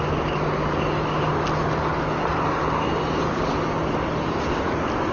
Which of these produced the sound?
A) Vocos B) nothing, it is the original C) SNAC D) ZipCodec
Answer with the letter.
B